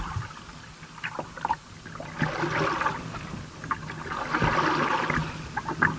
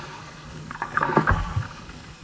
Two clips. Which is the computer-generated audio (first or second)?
second